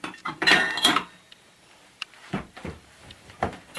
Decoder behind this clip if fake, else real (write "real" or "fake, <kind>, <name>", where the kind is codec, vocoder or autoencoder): fake, vocoder, BigVGAN v2